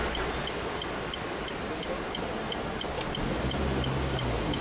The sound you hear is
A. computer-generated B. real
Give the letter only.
B